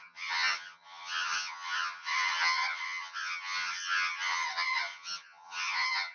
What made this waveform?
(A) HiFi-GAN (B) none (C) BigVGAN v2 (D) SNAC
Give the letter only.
A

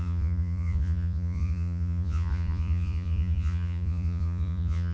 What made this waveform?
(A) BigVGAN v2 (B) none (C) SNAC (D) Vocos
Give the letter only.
D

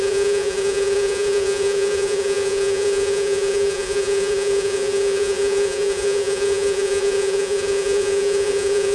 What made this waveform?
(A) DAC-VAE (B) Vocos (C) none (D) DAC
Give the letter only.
B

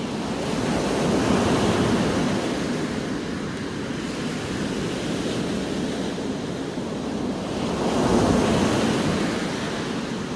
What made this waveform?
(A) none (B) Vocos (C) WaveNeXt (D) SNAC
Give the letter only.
A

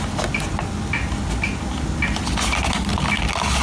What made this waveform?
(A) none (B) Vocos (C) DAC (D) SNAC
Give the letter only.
A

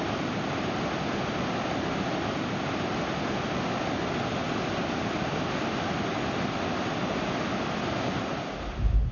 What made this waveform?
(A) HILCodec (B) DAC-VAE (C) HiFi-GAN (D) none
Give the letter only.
D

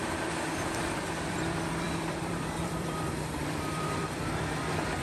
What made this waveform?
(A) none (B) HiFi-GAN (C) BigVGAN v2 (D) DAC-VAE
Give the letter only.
C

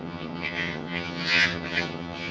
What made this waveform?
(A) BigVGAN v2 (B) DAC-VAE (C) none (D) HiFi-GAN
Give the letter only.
D